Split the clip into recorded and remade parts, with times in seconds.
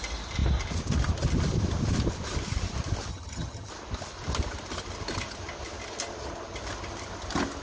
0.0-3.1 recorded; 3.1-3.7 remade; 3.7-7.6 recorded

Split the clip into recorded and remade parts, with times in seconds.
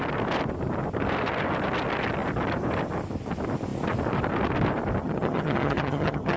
0.0-5.0 recorded; 5.0-6.4 remade